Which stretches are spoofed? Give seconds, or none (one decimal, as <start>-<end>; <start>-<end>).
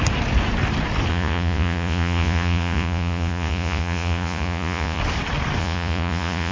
1.1-5.0; 5.6-6.5